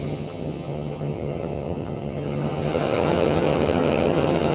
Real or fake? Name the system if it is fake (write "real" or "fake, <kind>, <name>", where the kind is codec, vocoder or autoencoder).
fake, vocoder, HiFi-GAN